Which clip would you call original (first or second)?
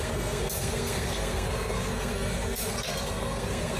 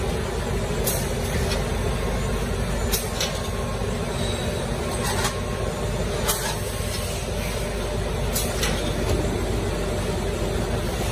second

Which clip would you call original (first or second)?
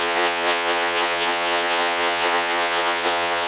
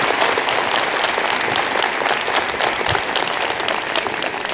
second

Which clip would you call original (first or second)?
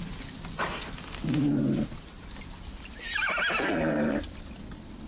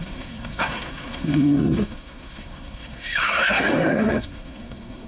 first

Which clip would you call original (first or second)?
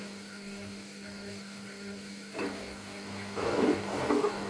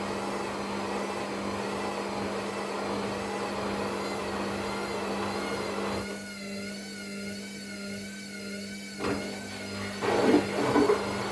second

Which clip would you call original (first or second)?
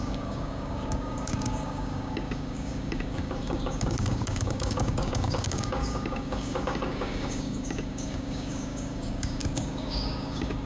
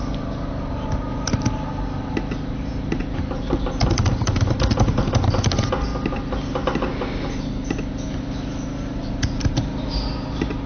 second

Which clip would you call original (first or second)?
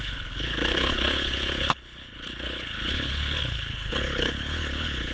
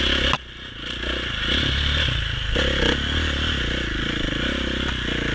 second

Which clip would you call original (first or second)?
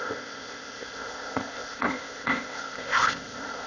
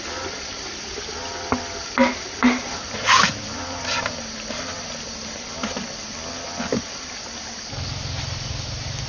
second